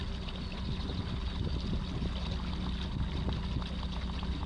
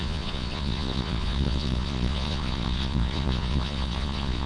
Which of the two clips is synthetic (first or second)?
second